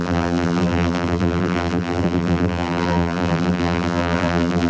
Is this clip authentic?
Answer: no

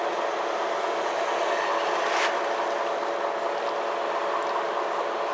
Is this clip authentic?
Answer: yes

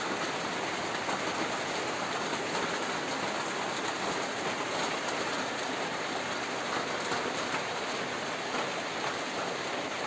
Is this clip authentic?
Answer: yes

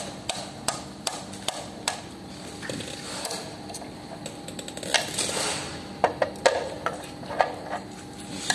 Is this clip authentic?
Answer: yes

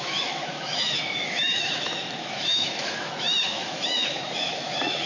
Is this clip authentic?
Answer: no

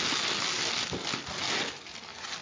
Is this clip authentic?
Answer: yes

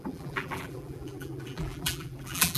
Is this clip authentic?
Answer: no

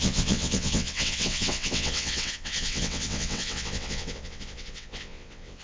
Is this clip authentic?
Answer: no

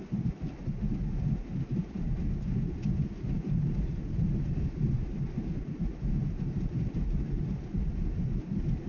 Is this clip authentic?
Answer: yes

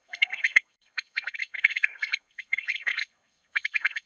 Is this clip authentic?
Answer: no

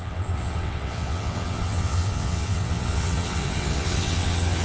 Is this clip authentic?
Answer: no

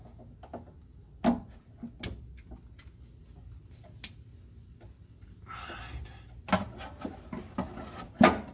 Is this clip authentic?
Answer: yes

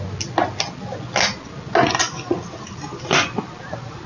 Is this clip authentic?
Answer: yes